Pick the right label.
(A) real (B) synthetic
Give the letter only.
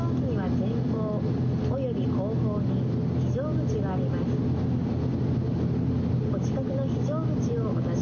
A